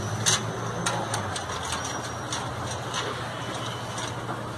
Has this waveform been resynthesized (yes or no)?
no